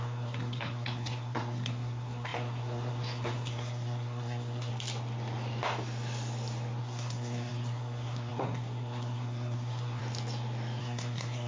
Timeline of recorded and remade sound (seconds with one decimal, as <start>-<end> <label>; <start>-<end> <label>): 0.0-4.7 remade; 4.7-6.8 recorded; 6.8-10.0 remade; 10.0-10.8 recorded; 10.8-11.5 remade